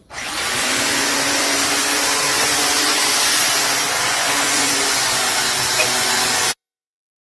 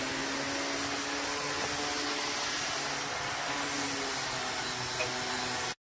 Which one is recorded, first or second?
second